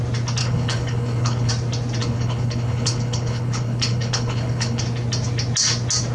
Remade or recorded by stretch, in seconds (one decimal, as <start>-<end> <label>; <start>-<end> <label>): 0.0-0.4 recorded; 0.4-1.5 remade; 1.5-2.0 recorded; 2.0-4.8 remade; 4.8-6.1 recorded